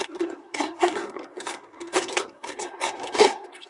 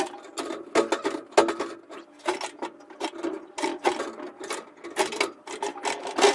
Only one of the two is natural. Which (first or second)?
second